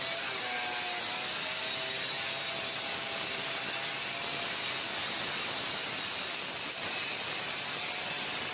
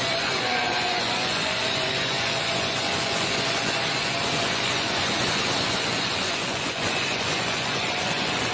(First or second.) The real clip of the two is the first